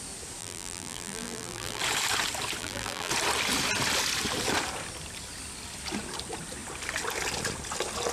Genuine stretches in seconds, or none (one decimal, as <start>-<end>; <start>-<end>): 0.0-0.4; 1.8-2.6; 3.1-8.1